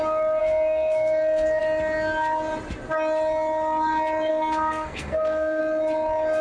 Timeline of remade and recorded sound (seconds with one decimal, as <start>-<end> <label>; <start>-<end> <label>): 0.0-0.4 recorded; 0.4-1.6 remade; 1.6-4.3 recorded; 4.3-5.6 remade; 5.6-6.4 recorded